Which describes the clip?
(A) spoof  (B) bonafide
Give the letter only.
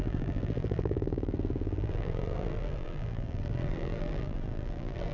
A